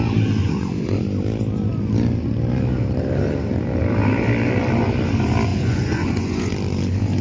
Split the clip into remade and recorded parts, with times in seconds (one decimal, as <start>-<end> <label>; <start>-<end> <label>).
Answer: 0.0-0.4 recorded; 0.4-1.0 remade; 1.0-5.5 recorded; 5.5-6.5 remade; 6.5-7.2 recorded

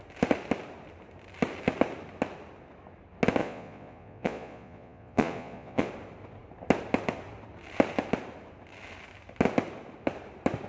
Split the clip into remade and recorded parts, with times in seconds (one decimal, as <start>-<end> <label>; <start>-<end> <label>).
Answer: 0.0-3.4 recorded; 3.4-5.9 remade; 5.9-10.7 recorded